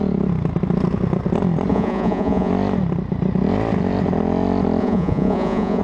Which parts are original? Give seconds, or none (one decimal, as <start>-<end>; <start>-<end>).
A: 0.0-1.7; 2.5-4.8